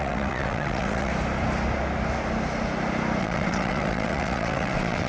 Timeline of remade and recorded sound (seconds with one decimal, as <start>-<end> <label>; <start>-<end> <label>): 0.0-1.1 remade; 1.1-3.2 recorded; 3.2-5.1 remade